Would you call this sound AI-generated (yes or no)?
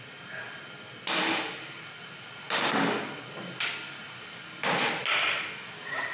no